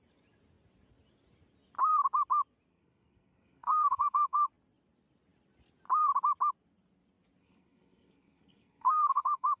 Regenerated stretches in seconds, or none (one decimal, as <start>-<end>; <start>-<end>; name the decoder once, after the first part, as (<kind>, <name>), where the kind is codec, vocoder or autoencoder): 2.7-4.5 (codec, SNAC); 7.4-9.6